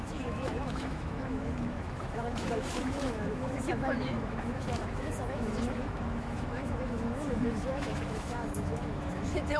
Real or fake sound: fake